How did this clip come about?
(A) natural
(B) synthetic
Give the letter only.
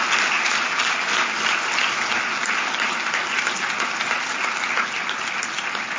A